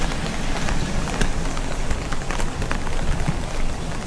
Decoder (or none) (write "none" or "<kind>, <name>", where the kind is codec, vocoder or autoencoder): none